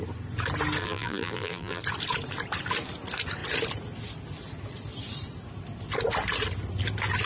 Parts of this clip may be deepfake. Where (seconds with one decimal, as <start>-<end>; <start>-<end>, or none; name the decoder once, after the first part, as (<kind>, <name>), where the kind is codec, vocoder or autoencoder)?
0.8-1.8 (vocoder, BigVGAN v2)